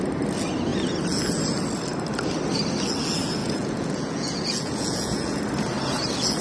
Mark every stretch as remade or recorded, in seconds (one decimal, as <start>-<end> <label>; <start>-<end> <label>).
0.0-3.4 recorded; 3.4-5.4 remade; 5.4-6.4 recorded